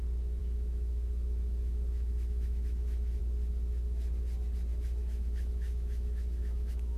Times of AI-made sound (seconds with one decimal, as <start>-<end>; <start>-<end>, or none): 0.4-3.2; 4.7-7.0